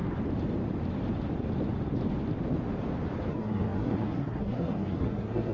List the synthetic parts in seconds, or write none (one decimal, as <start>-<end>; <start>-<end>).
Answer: 3.3-5.5